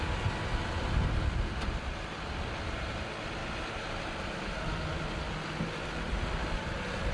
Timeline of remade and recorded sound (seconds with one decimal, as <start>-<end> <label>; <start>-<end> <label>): 0.0-7.1 recorded